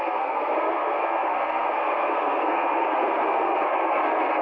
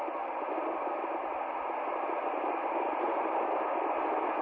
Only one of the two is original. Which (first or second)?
second